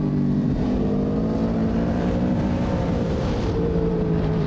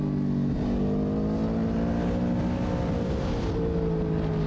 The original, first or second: second